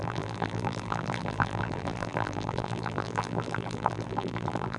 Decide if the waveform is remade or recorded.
remade